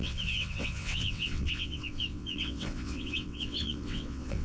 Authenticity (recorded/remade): remade